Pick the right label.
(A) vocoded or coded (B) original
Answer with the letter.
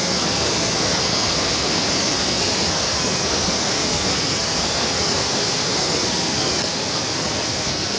A